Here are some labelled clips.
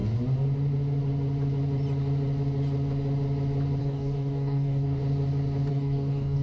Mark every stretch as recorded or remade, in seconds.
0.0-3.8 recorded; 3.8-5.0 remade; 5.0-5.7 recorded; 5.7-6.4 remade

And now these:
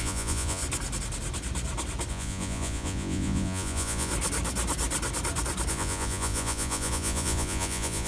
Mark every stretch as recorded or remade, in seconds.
0.0-0.6 remade; 0.6-2.1 recorded; 2.1-4.1 remade; 4.1-5.7 recorded; 5.7-8.1 remade

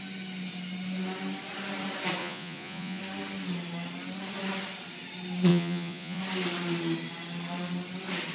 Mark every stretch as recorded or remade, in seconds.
0.0-2.2 recorded; 2.2-3.0 remade; 3.0-5.5 recorded; 5.5-6.2 remade; 6.2-8.3 recorded

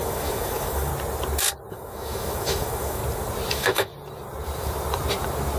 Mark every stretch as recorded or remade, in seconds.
0.0-0.9 remade; 0.9-1.7 recorded; 1.7-3.0 remade; 3.0-3.5 recorded; 3.5-3.9 remade; 3.9-5.6 recorded

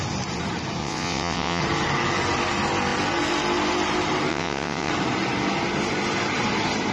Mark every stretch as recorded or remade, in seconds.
0.0-0.8 recorded; 0.8-1.6 remade; 1.6-4.3 recorded; 4.3-4.9 remade; 4.9-6.9 recorded

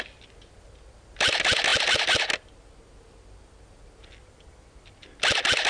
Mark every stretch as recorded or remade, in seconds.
0.0-5.7 recorded

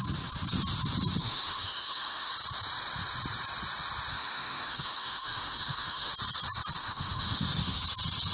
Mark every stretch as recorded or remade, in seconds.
0.0-1.2 recorded; 1.2-2.3 remade; 2.3-4.1 recorded; 4.1-6.1 remade; 6.1-6.8 recorded; 6.8-7.8 remade; 7.8-8.3 recorded